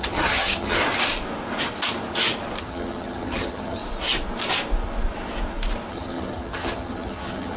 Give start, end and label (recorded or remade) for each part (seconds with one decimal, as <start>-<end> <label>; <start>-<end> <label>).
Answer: 0.0-0.8 remade; 0.8-2.6 recorded; 2.6-3.8 remade; 3.8-5.9 recorded; 5.9-7.6 remade